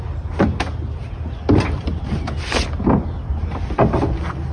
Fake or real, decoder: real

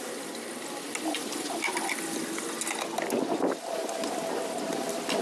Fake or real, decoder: real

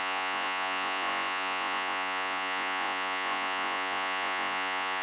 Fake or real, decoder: fake, vocoder, Vocos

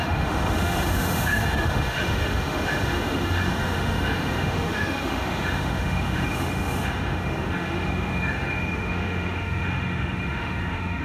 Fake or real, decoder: fake, autoencoder, DAC-VAE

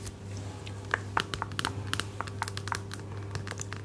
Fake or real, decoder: real